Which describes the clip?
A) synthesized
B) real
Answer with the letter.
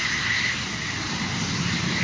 B